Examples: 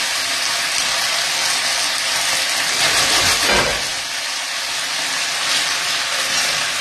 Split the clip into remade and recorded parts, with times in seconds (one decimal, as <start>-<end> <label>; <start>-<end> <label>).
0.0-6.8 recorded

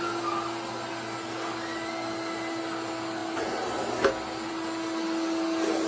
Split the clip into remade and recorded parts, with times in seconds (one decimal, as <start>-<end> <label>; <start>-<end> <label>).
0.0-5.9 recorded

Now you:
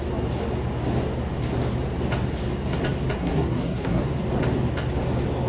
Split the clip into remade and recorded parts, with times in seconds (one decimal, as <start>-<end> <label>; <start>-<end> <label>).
0.0-3.2 recorded; 3.2-4.0 remade; 4.0-5.5 recorded

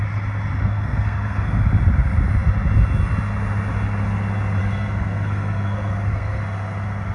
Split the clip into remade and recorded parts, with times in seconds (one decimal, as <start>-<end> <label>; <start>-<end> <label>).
0.0-0.6 recorded; 0.6-1.6 remade; 1.6-4.6 recorded; 4.6-6.4 remade; 6.4-7.1 recorded

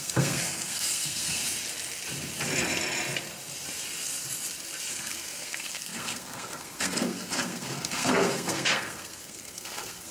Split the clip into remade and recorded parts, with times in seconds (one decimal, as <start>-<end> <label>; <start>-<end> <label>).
0.0-1.4 remade; 1.4-4.9 recorded; 4.9-10.1 remade

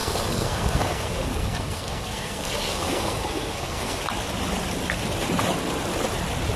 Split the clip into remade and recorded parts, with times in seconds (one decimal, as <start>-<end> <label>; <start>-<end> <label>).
0.0-4.0 remade; 4.0-6.6 recorded

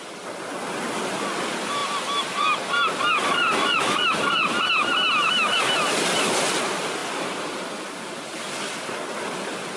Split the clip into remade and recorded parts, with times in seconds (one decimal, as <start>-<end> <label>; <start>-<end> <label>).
0.0-9.8 recorded